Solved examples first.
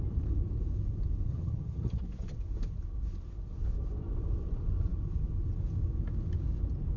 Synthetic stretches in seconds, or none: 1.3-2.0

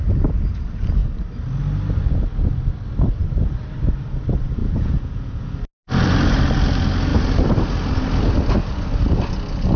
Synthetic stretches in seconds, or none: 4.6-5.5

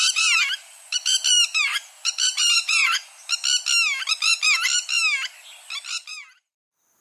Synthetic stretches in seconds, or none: 0.0-2.8